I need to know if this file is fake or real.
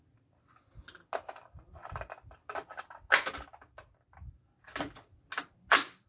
real